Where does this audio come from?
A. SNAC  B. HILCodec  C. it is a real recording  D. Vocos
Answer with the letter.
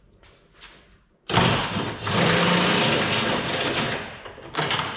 C